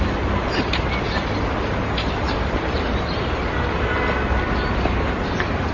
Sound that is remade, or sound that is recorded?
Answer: recorded